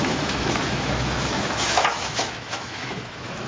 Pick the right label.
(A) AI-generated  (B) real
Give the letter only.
A